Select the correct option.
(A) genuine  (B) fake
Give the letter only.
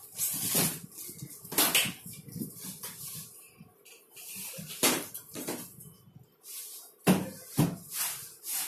A